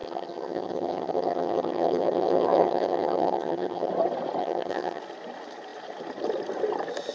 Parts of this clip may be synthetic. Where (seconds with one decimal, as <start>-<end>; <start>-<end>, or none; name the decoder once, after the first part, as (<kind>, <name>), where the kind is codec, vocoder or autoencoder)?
0.0-3.9 (vocoder, HiFi-GAN); 4.4-5.0